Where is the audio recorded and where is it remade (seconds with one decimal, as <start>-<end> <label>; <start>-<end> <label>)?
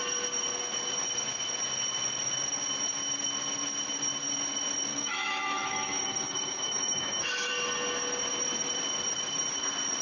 0.0-4.9 recorded; 4.9-7.5 remade; 7.5-10.0 recorded